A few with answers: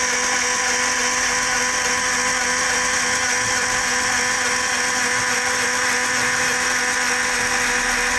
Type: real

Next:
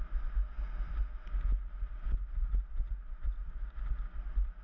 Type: real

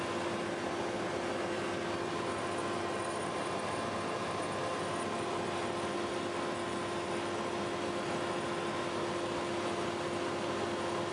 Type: real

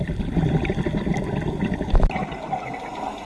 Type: real